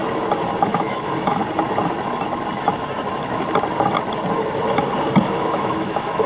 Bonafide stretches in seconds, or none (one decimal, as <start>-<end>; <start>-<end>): 0.0-0.6; 1.4-5.2